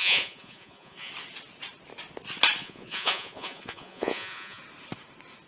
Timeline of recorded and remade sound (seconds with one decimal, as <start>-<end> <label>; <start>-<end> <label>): 0.0-1.1 remade; 1.1-2.6 recorded; 2.6-4.6 remade; 4.6-5.5 recorded